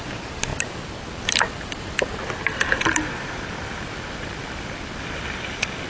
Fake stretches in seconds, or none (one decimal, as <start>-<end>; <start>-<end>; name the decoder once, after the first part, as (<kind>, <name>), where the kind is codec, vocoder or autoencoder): none